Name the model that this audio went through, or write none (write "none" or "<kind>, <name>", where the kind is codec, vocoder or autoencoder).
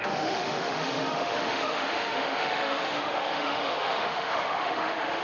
autoencoder, DAC-VAE